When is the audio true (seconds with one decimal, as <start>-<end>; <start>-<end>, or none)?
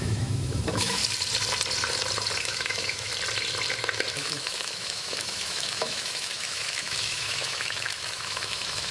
1.0-2.4; 3.1-4.1